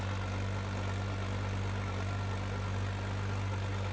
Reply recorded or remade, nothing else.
recorded